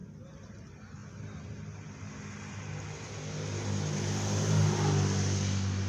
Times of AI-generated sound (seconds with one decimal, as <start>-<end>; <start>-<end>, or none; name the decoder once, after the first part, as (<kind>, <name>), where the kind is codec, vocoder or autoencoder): none

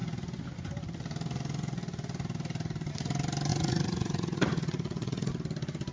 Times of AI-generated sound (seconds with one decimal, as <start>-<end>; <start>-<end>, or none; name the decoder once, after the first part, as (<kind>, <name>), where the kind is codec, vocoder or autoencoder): 3.5-5.3 (vocoder, Vocos)

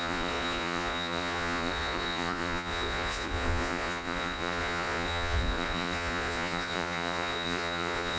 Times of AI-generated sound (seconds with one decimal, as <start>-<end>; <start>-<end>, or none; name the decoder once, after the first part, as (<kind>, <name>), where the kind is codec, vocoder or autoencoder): 0.0-8.2 (vocoder, Vocos)